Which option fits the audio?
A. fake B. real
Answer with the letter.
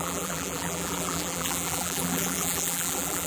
A